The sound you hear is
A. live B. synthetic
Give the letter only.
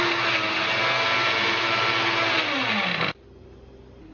A